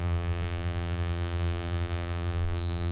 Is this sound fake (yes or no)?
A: yes